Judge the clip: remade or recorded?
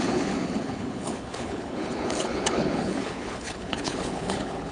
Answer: remade